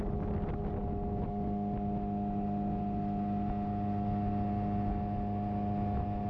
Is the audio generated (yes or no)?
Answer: no